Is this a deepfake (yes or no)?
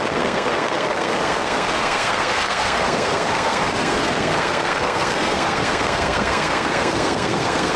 yes